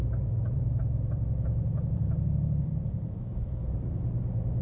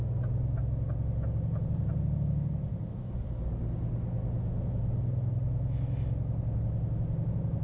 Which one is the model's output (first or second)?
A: first